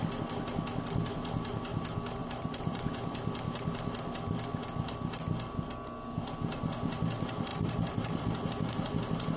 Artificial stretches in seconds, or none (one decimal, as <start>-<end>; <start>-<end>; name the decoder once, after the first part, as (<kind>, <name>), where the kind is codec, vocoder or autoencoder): 2.2-2.8 (vocoder, BigVGAN v2); 7.5-8.2